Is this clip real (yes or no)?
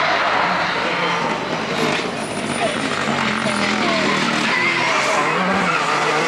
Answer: yes